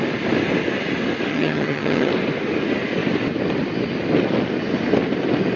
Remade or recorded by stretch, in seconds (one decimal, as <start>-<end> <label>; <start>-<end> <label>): 0.0-1.3 recorded; 1.3-2.1 remade; 2.1-5.6 recorded